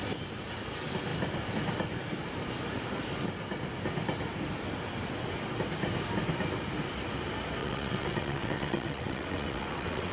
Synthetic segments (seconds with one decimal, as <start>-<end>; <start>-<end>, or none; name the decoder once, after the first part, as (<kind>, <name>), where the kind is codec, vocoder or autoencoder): 7.6-10.1 (vocoder, WaveNeXt)